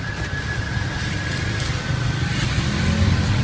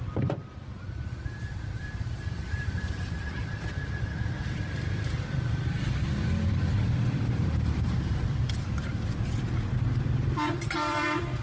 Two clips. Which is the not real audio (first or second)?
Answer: second